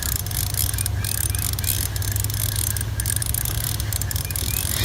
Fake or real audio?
real